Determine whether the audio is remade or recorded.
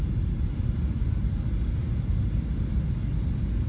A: recorded